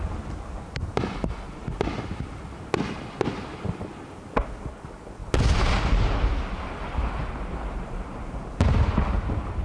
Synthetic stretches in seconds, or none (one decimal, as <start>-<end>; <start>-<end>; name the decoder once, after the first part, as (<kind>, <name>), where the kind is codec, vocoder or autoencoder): none